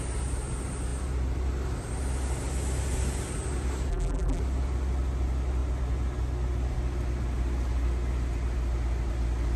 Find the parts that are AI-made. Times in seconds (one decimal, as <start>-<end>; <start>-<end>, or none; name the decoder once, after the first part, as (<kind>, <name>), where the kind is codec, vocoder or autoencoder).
3.9-4.4 (vocoder, BigVGAN v2)